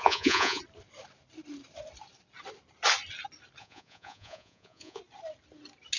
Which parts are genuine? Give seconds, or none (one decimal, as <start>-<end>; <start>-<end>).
0.6-3.6; 5.0-6.0